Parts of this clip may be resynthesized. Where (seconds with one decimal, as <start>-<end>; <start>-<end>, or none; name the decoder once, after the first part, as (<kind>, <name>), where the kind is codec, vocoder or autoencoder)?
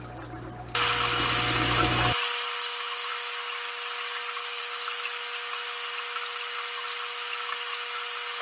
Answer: none